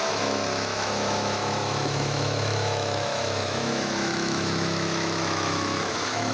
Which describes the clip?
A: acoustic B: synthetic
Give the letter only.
B